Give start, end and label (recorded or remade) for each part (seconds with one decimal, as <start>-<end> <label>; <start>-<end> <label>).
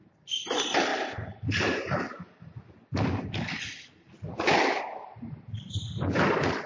0.0-6.7 recorded